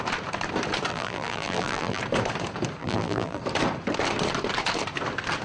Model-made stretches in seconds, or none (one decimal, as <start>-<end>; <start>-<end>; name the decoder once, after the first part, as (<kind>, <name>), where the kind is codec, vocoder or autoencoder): 0.9-2.0 (vocoder, BigVGAN v2); 2.8-3.4